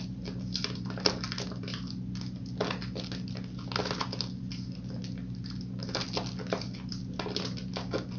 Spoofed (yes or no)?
no